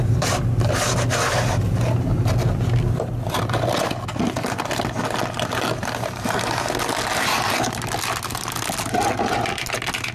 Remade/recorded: recorded